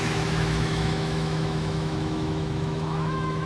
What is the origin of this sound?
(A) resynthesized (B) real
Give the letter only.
A